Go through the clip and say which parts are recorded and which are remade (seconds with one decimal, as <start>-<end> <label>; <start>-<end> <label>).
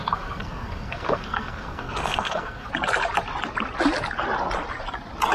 0.0-2.7 remade; 2.7-5.3 recorded